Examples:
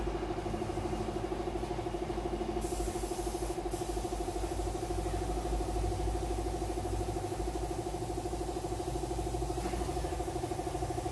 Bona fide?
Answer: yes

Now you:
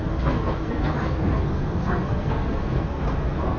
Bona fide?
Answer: no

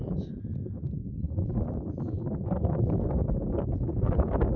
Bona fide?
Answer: yes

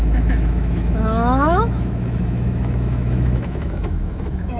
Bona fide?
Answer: no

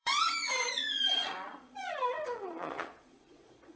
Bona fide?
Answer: no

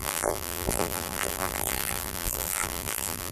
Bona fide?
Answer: no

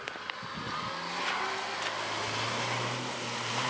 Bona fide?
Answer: yes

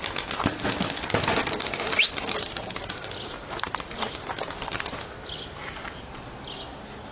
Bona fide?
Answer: yes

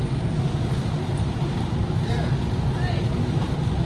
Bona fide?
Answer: no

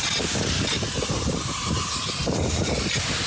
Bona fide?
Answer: yes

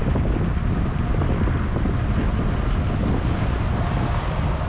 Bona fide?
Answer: yes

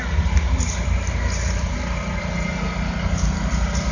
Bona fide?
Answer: yes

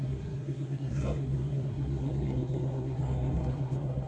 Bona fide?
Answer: no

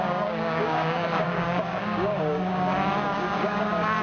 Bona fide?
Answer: no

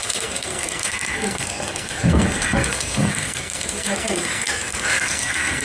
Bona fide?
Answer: no